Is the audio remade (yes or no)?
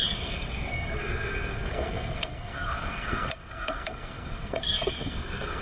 yes